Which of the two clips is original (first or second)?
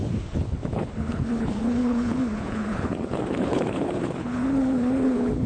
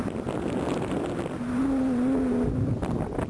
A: second